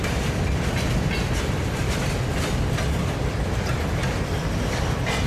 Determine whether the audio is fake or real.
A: real